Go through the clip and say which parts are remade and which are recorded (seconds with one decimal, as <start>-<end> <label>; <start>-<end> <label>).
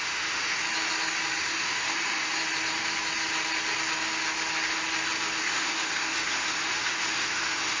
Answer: 0.0-0.6 remade; 0.6-1.4 recorded; 1.4-2.4 remade; 2.4-5.4 recorded; 5.4-7.8 remade